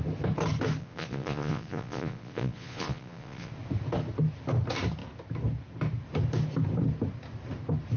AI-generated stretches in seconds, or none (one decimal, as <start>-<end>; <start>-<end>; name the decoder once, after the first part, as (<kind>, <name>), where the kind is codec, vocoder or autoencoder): 0.8-3.5 (vocoder, Vocos)